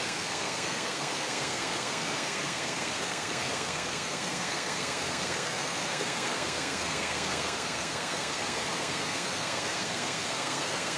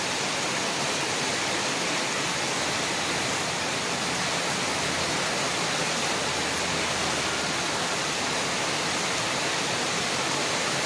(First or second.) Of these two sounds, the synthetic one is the first